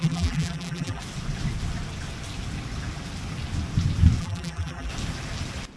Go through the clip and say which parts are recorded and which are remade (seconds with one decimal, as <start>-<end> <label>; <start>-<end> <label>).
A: 0.0-1.0 remade; 1.0-4.2 recorded; 4.2-4.9 remade; 4.9-5.8 recorded